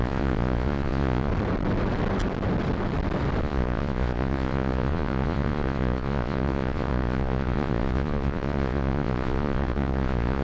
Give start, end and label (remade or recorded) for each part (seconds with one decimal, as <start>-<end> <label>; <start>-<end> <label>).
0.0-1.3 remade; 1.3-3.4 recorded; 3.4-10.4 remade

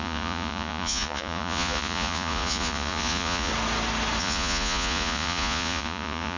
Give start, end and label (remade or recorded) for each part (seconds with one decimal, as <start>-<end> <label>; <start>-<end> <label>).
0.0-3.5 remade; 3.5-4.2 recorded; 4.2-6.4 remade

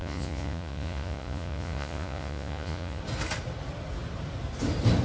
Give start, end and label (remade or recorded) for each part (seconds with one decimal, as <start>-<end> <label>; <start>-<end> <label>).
0.0-3.0 remade; 3.0-5.0 recorded

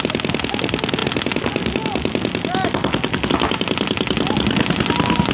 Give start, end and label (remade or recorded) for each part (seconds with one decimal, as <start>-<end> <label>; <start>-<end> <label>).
0.0-5.3 recorded

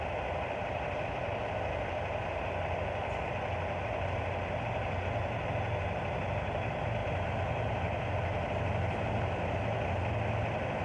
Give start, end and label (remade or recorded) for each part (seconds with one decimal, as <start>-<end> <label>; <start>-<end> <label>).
0.0-10.8 recorded

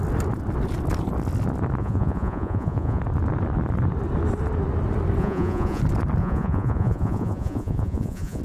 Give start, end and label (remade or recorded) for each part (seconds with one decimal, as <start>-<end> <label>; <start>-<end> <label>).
0.0-1.8 recorded; 1.8-3.0 remade; 3.0-5.2 recorded; 5.2-5.8 remade; 5.8-6.2 recorded; 6.2-8.4 remade

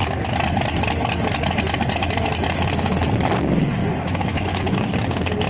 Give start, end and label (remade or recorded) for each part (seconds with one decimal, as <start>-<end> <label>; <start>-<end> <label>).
0.0-3.8 recorded; 3.8-4.9 remade; 4.9-5.5 recorded